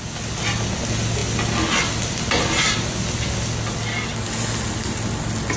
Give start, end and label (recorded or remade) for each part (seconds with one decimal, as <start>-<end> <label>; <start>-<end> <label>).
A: 0.0-5.6 recorded